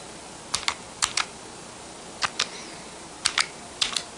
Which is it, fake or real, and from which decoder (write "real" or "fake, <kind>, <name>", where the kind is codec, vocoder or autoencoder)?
real